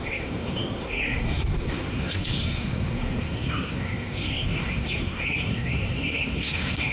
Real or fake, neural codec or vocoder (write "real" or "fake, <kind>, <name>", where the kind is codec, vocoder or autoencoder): fake, codec, SNAC